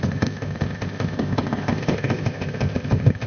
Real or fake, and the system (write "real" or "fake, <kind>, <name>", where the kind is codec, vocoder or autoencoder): fake, codec, ZipCodec